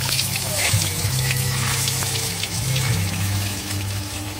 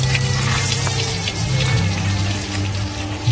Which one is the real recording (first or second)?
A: second